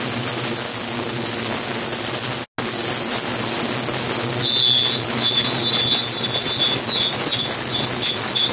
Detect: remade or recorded recorded